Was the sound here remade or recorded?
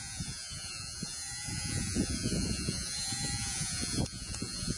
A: remade